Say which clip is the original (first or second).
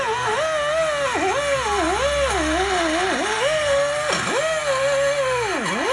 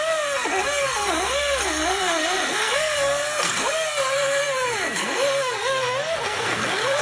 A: first